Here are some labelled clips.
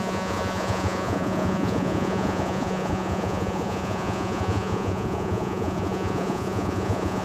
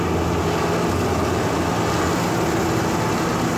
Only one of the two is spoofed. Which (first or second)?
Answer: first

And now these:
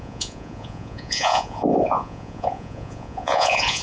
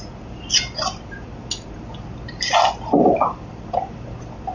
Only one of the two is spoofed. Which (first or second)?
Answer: first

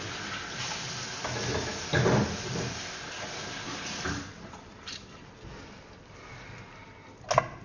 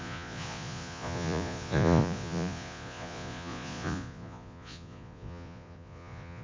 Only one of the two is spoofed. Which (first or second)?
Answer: second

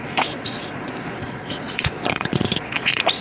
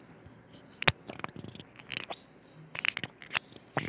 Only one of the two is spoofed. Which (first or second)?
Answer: first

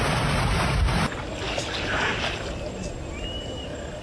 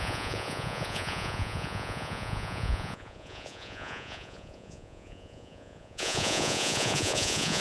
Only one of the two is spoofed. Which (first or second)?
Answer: second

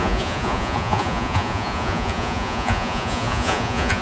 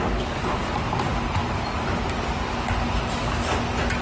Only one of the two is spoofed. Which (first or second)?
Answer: first